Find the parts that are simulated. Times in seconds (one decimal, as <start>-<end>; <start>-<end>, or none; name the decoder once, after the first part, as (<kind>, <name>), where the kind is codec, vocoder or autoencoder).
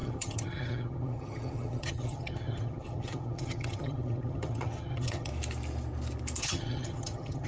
0.0-5.3 (vocoder, HiFi-GAN); 6.4-7.5